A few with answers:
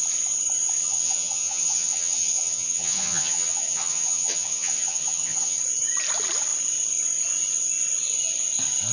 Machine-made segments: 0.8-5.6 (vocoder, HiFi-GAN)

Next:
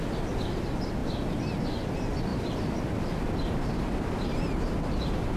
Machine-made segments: 2.3-3.9 (vocoder, BigVGAN v2)